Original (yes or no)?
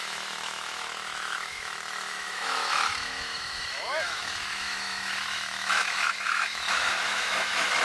no